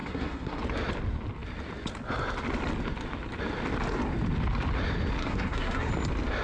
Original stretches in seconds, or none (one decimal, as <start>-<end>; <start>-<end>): 0.6-5.2; 5.9-6.4

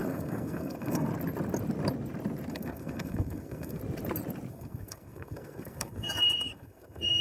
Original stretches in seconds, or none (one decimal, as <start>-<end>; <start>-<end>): 1.1-2.5; 3.8-4.5

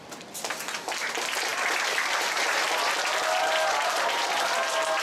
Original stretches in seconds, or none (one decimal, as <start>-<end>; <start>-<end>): 0.0-5.0

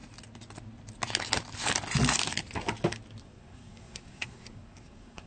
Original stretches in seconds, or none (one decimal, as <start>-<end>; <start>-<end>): 0.0-3.2

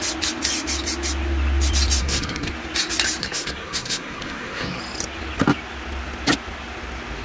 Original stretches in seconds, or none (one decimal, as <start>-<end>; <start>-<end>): 0.0-2.0; 2.5-3.2; 4.8-7.2

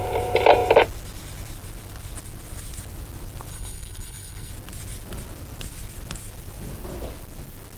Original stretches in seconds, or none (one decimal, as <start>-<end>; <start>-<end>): 0.0-3.5; 4.5-7.8

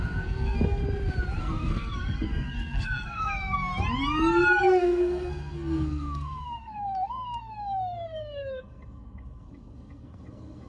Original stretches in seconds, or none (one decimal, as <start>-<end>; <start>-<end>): 0.8-1.4; 3.7-4.6